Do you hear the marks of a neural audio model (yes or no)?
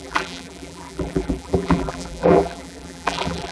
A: yes